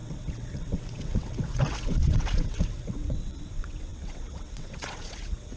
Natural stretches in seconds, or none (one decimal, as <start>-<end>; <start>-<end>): none